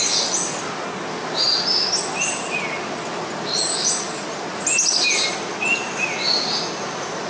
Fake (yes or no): no